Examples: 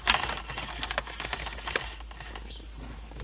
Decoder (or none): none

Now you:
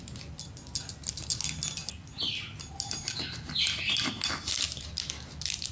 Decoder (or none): none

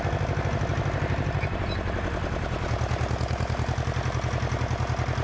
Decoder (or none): none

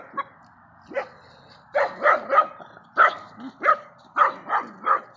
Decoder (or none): none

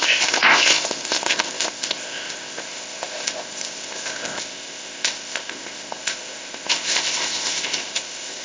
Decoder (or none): codec, ZipCodec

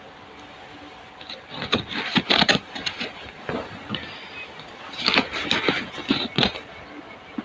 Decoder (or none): none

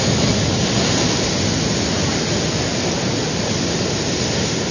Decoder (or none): none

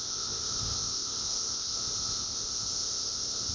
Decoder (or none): codec, ZipCodec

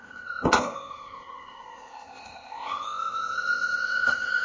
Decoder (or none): codec, ZipCodec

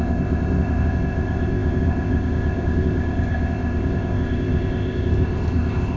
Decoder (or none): codec, ZipCodec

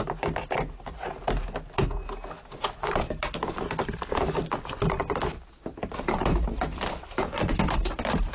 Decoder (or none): none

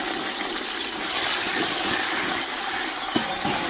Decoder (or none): none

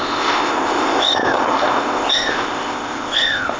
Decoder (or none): codec, ZipCodec